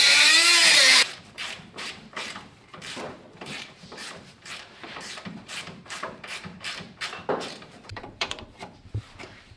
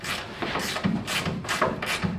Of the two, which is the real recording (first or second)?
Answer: second